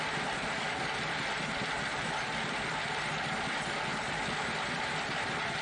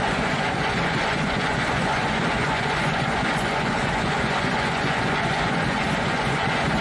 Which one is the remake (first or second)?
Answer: second